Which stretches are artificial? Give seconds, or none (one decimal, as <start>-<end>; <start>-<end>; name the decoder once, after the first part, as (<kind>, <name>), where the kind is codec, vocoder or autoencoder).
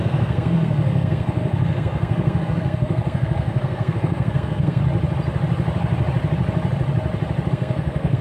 0.0-4.8 (codec, SNAC); 7.5-8.2